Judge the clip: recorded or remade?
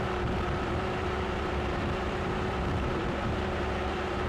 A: remade